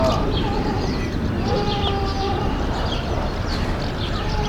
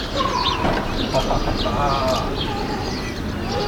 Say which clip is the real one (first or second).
second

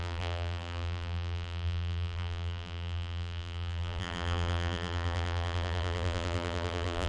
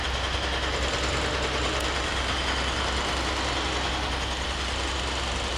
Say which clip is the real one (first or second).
second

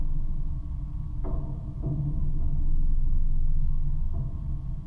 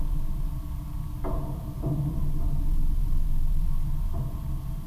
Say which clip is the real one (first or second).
first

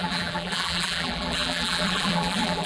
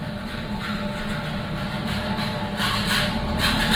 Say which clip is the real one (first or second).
second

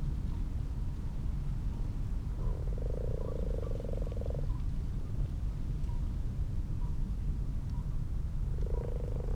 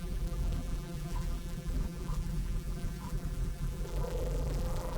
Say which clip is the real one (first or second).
first